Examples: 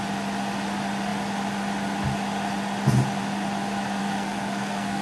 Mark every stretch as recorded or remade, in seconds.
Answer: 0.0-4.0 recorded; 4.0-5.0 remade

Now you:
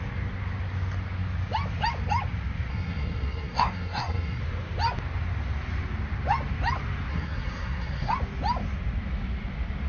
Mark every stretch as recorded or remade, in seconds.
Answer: 0.0-2.7 recorded; 2.7-4.4 remade; 4.4-7.1 recorded; 7.1-8.1 remade; 8.1-9.9 recorded

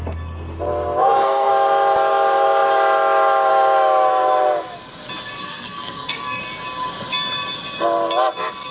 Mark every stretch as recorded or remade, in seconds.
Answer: 0.0-1.0 recorded; 1.0-1.5 remade; 1.5-5.4 recorded; 5.4-6.4 remade; 6.4-8.7 recorded